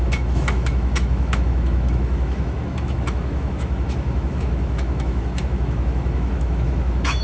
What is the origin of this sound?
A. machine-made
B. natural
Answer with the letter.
A